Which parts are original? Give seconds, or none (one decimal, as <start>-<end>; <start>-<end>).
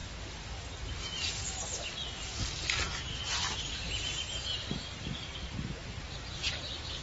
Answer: 0.0-4.2